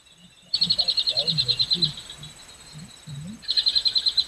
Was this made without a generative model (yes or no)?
yes